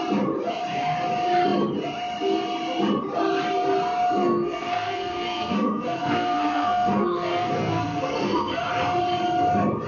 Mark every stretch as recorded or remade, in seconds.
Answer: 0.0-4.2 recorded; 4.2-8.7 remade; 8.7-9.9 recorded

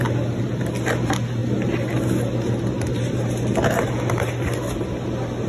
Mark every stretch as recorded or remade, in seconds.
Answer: 0.0-5.5 recorded

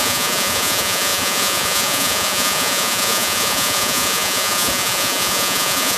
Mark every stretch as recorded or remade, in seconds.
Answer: 0.0-6.0 remade

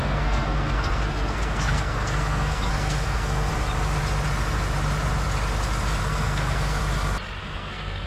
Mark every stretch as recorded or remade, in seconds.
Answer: 0.0-3.5 remade; 3.5-6.0 recorded; 6.0-6.8 remade; 6.8-7.4 recorded; 7.4-8.1 remade

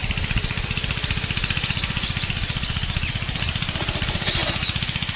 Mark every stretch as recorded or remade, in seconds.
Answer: 0.0-4.4 remade; 4.4-5.2 recorded

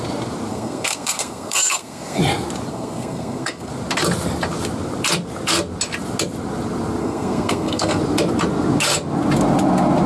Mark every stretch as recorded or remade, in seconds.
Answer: 0.0-0.5 recorded; 0.5-2.2 remade; 2.2-2.7 recorded; 2.7-3.7 remade; 3.7-7.0 recorded; 7.0-8.0 remade; 8.0-10.1 recorded

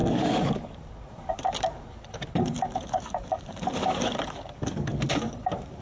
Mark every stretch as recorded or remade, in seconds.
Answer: 0.0-5.8 remade